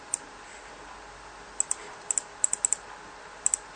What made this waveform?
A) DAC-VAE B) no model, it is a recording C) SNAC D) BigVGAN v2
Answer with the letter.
B